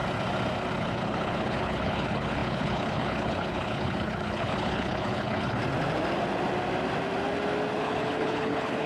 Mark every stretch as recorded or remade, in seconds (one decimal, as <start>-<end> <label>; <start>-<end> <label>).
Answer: 0.0-0.8 recorded; 0.8-5.6 remade; 5.6-7.8 recorded; 7.8-8.9 remade